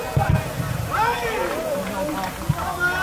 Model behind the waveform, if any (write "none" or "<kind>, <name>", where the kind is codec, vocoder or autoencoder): none